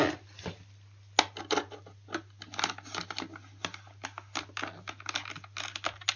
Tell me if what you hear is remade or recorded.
recorded